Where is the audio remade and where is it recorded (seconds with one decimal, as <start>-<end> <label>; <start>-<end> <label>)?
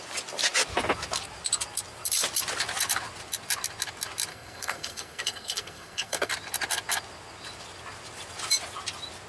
0.0-4.3 recorded; 4.3-6.3 remade; 6.3-9.3 recorded